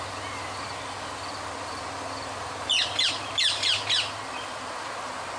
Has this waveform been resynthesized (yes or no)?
no